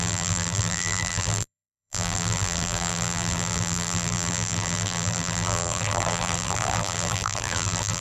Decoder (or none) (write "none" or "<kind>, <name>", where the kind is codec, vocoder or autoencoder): vocoder, BigVGAN v2